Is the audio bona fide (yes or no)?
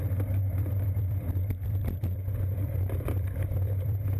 no